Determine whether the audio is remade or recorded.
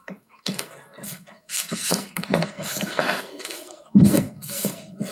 remade